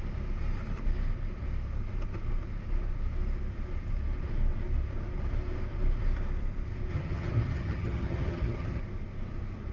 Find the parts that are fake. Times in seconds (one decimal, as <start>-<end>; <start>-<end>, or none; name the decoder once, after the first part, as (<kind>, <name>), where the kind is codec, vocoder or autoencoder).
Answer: 6.9-8.8 (vocoder, HiFi-GAN)